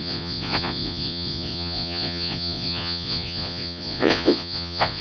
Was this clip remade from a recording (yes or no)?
yes